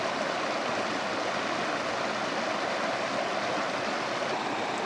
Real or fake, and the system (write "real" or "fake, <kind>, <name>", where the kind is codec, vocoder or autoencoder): real